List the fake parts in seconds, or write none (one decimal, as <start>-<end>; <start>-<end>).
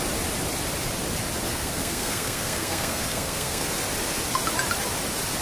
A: 1.5-3.7